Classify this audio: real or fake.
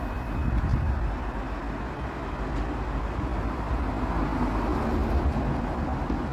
real